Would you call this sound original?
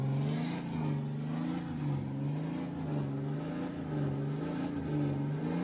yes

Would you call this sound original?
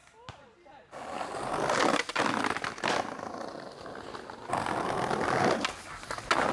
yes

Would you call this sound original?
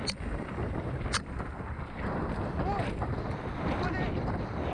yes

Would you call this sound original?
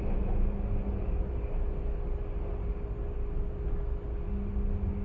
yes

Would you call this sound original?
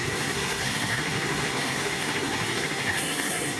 no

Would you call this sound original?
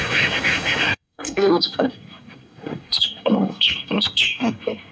no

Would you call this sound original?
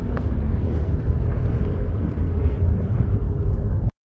no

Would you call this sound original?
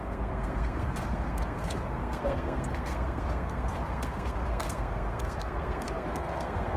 no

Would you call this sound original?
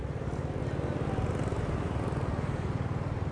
yes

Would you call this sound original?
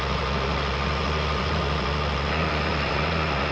no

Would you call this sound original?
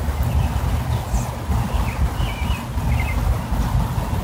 yes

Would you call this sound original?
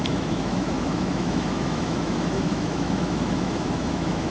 no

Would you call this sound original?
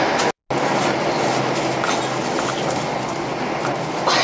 yes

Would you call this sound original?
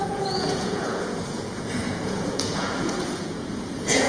no